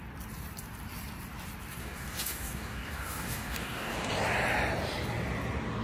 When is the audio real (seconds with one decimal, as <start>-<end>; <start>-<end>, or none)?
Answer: 0.0-1.8; 4.1-5.8